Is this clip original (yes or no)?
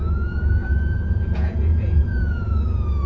no